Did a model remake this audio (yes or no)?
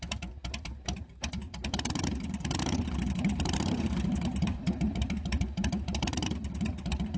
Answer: yes